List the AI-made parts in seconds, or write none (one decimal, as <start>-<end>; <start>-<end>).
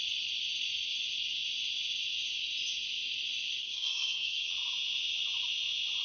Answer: 3.6-4.5